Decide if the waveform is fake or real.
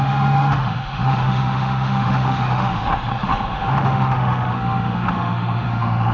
fake